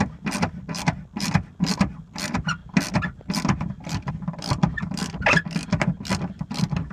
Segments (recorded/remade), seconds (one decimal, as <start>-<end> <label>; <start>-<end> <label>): 0.0-6.9 recorded